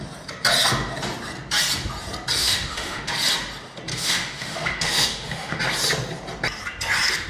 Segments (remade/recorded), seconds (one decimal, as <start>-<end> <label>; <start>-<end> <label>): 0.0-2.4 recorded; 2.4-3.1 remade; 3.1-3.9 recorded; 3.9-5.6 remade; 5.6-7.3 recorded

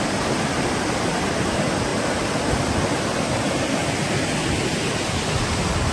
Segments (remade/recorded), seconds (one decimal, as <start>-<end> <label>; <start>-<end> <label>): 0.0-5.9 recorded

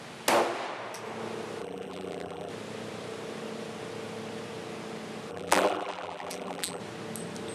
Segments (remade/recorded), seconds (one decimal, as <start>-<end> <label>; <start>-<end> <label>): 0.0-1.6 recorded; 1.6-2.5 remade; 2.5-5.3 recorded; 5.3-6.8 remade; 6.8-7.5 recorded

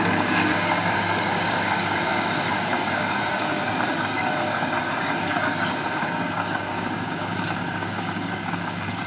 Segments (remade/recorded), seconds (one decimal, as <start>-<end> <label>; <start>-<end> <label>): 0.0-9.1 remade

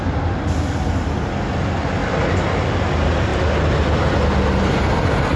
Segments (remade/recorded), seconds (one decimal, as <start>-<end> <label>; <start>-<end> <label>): 0.0-5.4 recorded

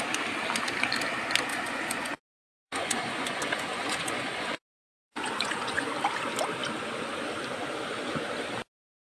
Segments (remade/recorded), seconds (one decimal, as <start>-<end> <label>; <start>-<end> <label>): 0.0-1.5 recorded; 1.5-5.9 remade; 5.9-9.0 recorded

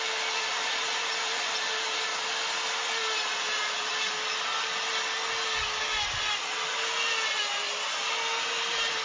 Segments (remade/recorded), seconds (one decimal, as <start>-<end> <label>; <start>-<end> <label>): 0.0-2.1 remade; 2.1-2.9 recorded; 2.9-3.9 remade; 3.9-8.6 recorded; 8.6-9.0 remade